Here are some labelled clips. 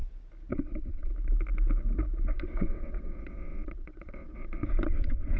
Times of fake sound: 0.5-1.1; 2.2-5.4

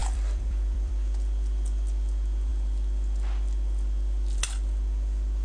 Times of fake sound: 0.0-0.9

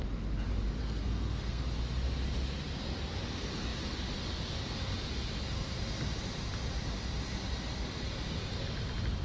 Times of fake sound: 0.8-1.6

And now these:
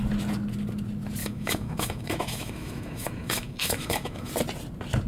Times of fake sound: 1.2-4.3

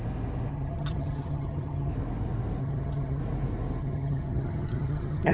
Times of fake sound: 0.5-1.9; 2.6-3.2; 3.8-5.3

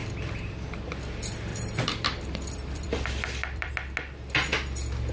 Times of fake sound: 0.0-0.9; 1.5-3.7